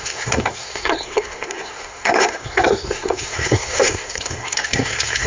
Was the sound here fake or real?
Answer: fake